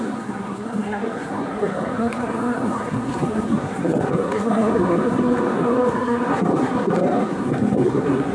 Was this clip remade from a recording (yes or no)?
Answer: yes